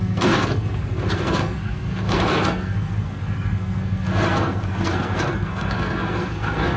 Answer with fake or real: fake